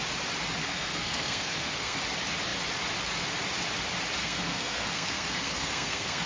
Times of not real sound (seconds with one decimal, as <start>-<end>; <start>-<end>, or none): 0.6-2.0; 4.2-6.3